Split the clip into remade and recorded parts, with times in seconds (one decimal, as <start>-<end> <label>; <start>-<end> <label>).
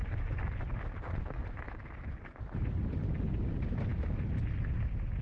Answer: 0.0-5.2 recorded